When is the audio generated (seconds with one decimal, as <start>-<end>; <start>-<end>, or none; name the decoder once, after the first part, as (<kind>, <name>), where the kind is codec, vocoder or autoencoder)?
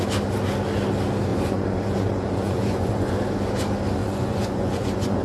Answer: 1.3-3.1 (vocoder, Vocos); 4.0-5.2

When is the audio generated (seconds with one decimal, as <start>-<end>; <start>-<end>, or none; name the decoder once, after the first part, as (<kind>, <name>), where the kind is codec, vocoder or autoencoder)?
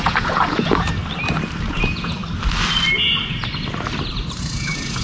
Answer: 0.0-1.0 (vocoder, Vocos); 1.6-2.2; 4.4-5.0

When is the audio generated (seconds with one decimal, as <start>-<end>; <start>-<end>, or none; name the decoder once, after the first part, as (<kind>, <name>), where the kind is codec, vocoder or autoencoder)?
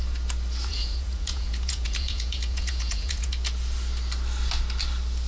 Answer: 0.7-3.3 (vocoder, Vocos)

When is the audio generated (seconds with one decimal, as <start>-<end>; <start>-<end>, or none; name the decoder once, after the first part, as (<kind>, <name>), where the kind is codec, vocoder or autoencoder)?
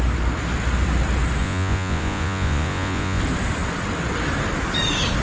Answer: 1.4-3.2 (vocoder, Vocos)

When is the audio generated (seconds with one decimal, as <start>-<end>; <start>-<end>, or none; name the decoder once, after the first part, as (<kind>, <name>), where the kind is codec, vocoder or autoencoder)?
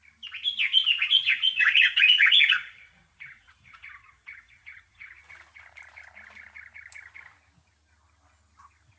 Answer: 0.8-5.2 (vocoder, Vocos)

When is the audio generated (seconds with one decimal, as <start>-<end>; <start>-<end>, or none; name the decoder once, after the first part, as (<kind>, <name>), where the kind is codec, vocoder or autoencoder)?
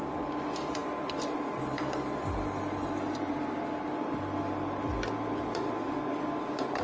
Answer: none